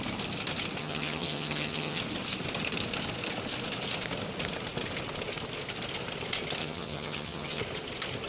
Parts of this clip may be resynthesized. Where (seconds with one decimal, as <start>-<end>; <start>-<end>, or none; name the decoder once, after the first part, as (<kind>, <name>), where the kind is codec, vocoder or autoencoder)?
0.8-2.0 (vocoder, HiFi-GAN); 6.6-7.6